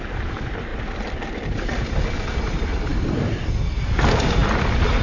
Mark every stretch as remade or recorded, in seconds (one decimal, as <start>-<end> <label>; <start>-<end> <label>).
0.0-0.7 recorded; 0.7-1.8 remade; 1.8-2.9 recorded; 2.9-3.5 remade; 3.5-4.4 recorded; 4.4-5.0 remade